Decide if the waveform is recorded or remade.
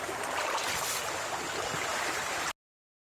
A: recorded